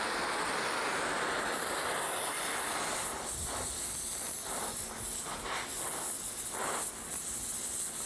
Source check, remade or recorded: recorded